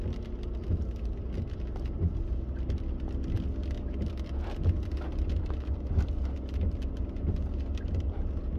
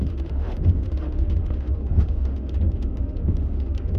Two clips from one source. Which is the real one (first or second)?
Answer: first